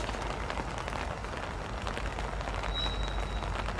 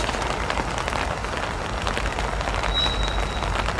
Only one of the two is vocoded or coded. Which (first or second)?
second